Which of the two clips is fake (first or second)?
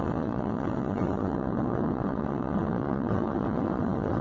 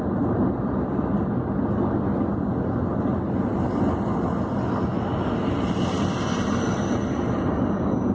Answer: first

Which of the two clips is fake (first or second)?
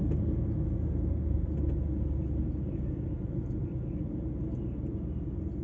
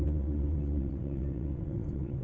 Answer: second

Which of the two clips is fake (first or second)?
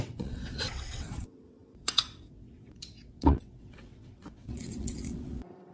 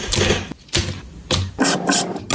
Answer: first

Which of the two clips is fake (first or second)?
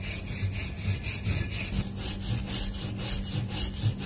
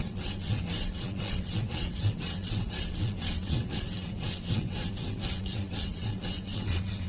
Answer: second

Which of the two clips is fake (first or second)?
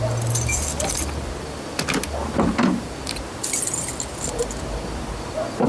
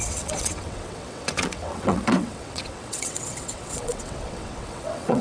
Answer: second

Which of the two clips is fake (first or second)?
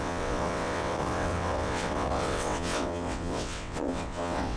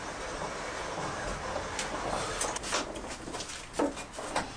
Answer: first